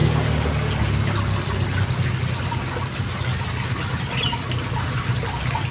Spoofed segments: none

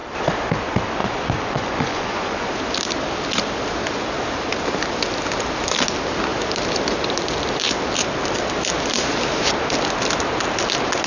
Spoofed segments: 1.0-2.5 (vocoder, Vocos)

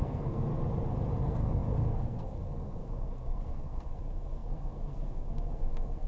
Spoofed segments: 0.0-0.5 (codec, SNAC); 1.2-6.1